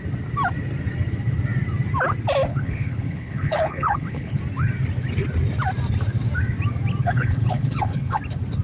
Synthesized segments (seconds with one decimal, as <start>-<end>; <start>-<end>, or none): 2.5-4.4; 7.0-8.2